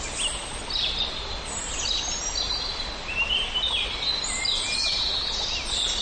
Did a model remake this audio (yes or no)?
no